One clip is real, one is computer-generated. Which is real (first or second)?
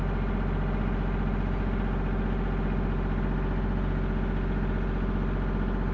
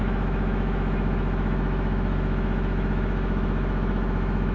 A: first